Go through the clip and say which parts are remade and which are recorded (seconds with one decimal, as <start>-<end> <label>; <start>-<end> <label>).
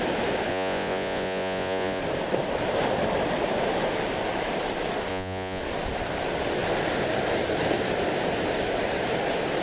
0.0-0.5 recorded; 0.5-2.0 remade; 2.0-5.1 recorded; 5.1-5.6 remade; 5.6-9.6 recorded